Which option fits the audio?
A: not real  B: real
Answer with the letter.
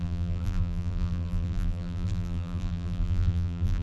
A